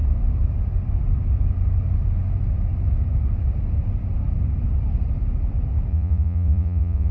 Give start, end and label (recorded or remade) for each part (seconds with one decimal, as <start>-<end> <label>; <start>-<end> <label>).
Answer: 0.0-5.9 recorded; 5.9-7.1 remade